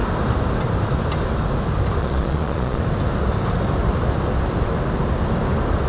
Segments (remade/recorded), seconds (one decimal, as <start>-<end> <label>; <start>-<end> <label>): 0.0-2.0 recorded; 2.0-2.8 remade; 2.8-5.9 recorded